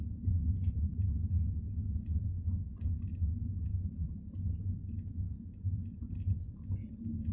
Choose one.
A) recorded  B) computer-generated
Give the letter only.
A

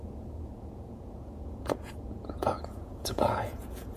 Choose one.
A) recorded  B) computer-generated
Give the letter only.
B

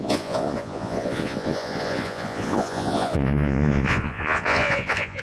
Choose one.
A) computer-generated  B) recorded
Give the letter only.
A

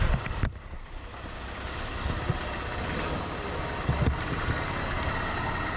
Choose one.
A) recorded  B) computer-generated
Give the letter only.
A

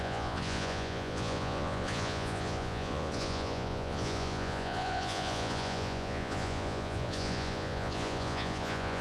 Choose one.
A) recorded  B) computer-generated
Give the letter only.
B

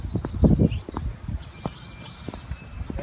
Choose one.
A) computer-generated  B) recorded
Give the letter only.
B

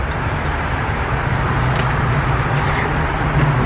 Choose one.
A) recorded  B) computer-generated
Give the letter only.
A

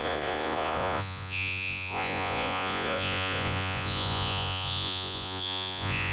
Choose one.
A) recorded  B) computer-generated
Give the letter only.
B